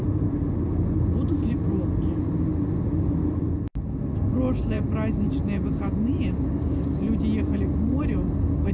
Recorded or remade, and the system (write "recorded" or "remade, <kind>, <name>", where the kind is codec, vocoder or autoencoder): recorded